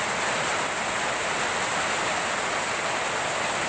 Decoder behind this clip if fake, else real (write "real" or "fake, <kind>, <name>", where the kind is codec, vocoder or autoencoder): real